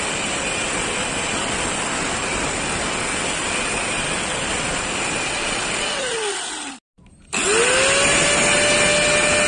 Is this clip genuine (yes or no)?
yes